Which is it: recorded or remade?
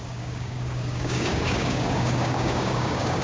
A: remade